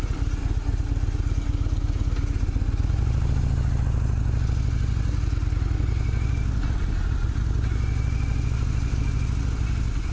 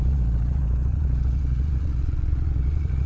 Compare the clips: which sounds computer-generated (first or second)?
second